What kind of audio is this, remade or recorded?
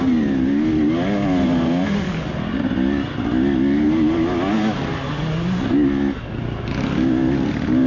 recorded